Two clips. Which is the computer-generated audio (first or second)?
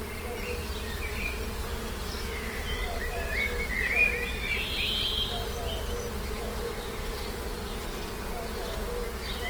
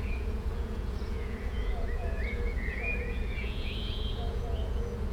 second